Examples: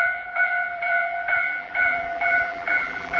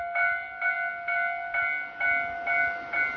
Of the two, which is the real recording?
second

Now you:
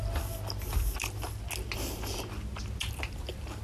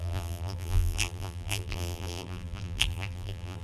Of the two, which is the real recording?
first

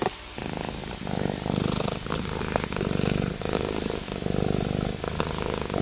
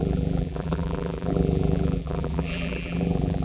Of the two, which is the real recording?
first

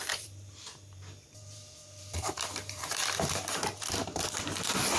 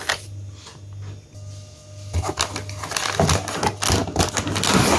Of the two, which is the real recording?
second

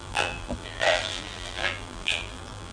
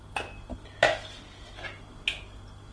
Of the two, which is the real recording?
second